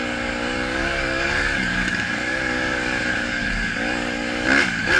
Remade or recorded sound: remade